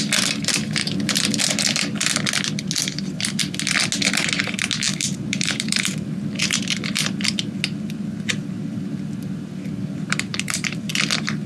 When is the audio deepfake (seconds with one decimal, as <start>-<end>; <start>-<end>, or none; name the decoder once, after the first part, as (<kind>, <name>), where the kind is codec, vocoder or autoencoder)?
0.8-1.4 (vocoder, BigVGAN v2); 4.9-6.6; 10.3-10.9